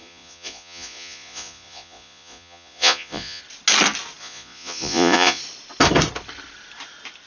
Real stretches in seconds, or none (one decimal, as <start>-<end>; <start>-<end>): 3.4-4.2; 5.4-7.3